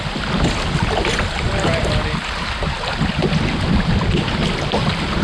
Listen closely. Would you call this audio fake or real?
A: real